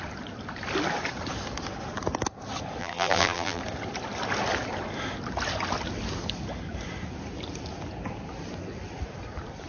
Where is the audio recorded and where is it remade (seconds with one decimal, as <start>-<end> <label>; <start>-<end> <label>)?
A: 0.0-2.8 recorded; 2.8-3.6 remade; 3.6-9.7 recorded